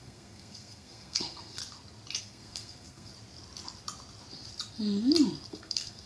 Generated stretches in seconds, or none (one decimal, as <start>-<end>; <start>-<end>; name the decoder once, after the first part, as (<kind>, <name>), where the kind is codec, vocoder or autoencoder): 0.0-1.6 (codec, SNAC); 2.2-3.1; 5.5-6.1